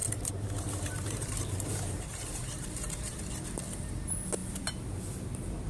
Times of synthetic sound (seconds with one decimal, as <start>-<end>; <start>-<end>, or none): 0.0-3.2; 4.4-5.0